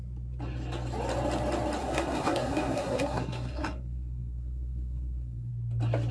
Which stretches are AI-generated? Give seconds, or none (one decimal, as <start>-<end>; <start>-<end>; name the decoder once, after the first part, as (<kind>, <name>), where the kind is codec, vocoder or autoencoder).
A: 1.8-5.5 (codec, SNAC)